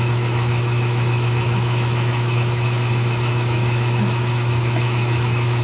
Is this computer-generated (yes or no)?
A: yes